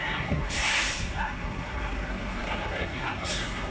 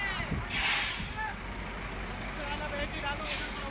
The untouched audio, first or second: second